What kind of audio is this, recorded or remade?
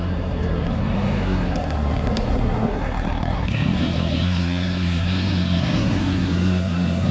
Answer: remade